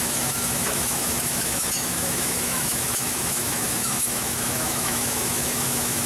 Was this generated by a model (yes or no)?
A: yes